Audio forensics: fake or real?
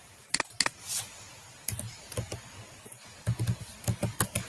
real